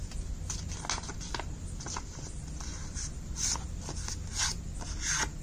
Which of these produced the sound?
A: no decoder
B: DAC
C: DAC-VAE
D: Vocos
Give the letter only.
A